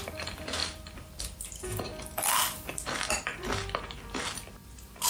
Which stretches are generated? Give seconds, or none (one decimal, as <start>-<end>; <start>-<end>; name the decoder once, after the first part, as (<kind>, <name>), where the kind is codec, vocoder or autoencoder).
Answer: 0.0-1.9 (vocoder, BigVGAN v2)